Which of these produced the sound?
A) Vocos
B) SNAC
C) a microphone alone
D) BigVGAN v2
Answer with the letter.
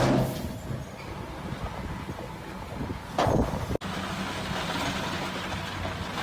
C